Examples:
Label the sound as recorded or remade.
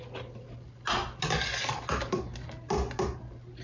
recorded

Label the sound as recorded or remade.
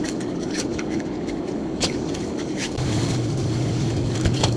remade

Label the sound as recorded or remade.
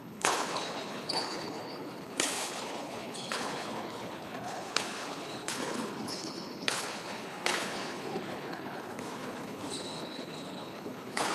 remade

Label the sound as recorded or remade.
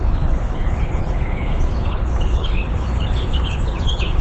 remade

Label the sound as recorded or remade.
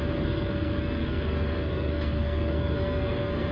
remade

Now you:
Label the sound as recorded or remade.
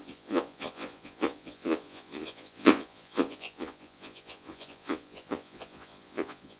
remade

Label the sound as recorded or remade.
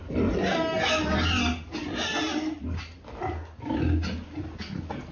recorded